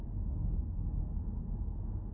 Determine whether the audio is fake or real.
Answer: fake